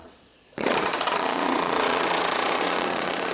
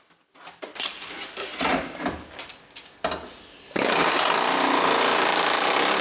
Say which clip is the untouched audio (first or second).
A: second